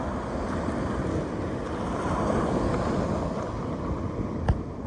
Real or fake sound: real